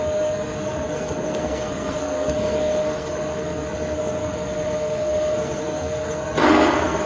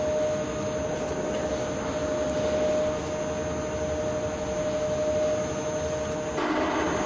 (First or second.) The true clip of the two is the second